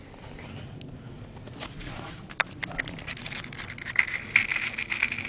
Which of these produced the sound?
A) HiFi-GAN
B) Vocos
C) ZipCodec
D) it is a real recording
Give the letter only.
D